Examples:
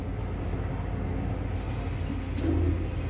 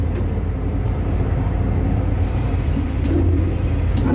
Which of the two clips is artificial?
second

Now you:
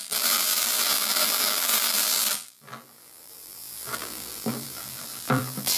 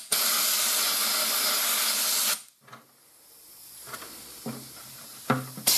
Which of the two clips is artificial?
first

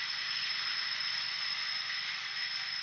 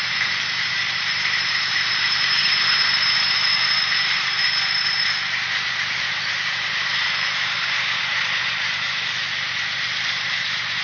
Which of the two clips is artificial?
second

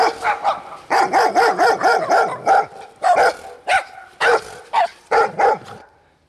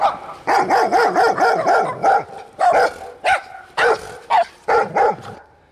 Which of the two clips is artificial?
first